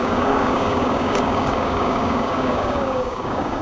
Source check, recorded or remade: remade